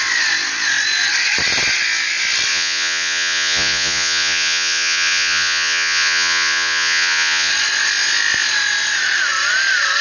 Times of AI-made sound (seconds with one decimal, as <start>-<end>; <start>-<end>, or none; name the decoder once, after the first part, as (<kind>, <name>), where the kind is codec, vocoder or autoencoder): 2.5-7.5 (vocoder, Vocos)